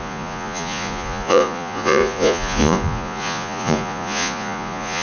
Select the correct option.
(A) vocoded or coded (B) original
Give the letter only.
A